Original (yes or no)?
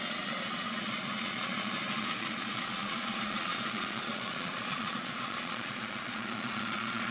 no